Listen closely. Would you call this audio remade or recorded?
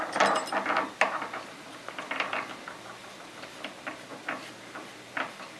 recorded